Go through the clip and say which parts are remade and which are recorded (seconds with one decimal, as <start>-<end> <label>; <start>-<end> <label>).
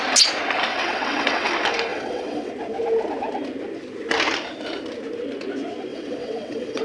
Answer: 0.0-0.7 recorded; 0.7-1.5 remade; 1.5-1.9 recorded; 1.9-2.5 remade; 2.5-5.9 recorded; 5.9-6.8 remade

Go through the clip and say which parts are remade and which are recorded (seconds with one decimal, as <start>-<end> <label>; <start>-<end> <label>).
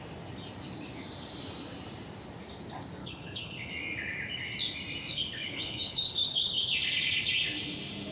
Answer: 0.0-3.0 recorded; 3.0-3.7 remade; 3.7-5.1 recorded; 5.1-6.7 remade; 6.7-8.1 recorded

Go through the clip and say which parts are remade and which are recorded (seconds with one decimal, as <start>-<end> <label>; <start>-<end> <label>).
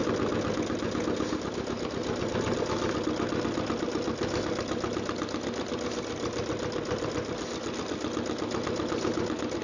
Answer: 0.0-9.6 recorded